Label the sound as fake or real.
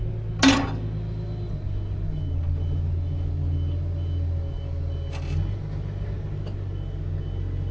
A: real